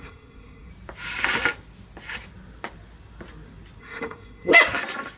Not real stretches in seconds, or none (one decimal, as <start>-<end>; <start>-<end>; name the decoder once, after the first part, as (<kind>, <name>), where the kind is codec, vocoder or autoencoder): 0.0-0.7 (codec, SNAC); 3.8-4.5

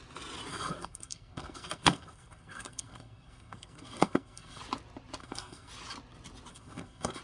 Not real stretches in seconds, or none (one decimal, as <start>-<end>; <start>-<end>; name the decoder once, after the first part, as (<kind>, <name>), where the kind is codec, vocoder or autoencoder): 0.5-4.6 (codec, SNAC); 5.2-5.7; 6.5-7.2

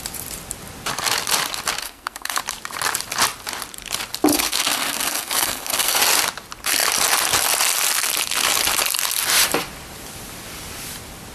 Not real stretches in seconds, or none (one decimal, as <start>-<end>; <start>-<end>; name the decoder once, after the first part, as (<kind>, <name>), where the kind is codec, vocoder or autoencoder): 1.8-2.4 (codec, SNAC); 4.3-6.0

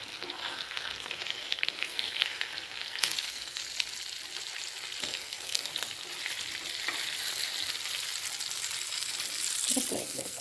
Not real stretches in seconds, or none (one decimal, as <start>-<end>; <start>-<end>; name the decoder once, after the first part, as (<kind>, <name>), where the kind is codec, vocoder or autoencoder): 0.0-3.6 (codec, SNAC); 5.0-5.7; 10.0-10.4

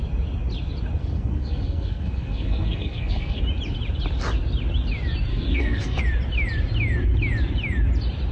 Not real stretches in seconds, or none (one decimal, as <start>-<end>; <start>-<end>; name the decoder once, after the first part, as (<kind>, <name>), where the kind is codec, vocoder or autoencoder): 1.0-3.4 (codec, SNAC); 5.3-6.0

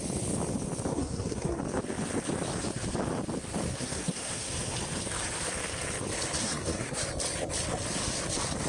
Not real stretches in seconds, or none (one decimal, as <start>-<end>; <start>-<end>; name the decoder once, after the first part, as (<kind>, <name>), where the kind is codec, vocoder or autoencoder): 0.9-1.6 (codec, SNAC); 3.7-4.5; 6.4-7.0